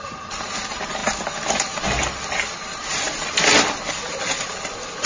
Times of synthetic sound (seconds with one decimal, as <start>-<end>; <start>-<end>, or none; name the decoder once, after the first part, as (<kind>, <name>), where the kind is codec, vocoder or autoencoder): none